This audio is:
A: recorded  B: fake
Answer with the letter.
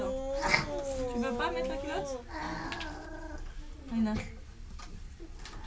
A